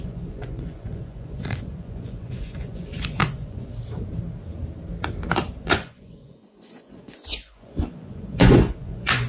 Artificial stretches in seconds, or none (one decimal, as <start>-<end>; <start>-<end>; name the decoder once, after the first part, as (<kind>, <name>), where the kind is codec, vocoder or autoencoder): 0.0-3.7 (vocoder, Vocos); 5.6-9.3